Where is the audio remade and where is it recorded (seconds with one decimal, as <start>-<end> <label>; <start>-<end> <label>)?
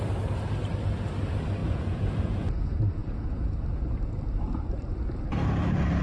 0.0-1.6 recorded; 1.6-2.5 remade; 2.5-3.0 recorded; 3.0-3.5 remade; 3.5-6.0 recorded